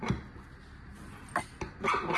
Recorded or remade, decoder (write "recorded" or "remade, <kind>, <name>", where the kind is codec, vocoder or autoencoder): recorded